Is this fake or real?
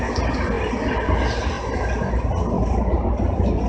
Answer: real